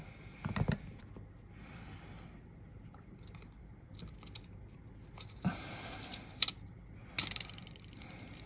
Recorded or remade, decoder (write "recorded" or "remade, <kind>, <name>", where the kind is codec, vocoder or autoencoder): recorded